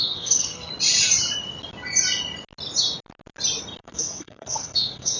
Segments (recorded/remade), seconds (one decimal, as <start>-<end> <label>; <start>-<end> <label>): 0.0-0.7 remade; 0.7-3.8 recorded; 3.8-5.2 remade